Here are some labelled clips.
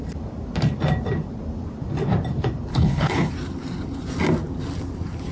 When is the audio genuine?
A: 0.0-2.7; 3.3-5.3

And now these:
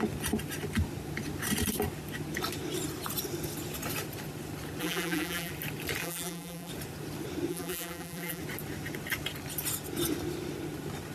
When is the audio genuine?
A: 0.0-4.8; 5.5-6.0; 6.7-7.5; 8.4-11.1

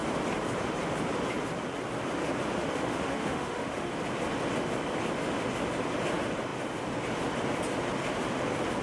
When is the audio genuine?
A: 0.0-2.6; 3.9-8.8